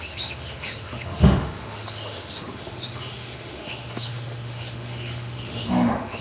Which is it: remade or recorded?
remade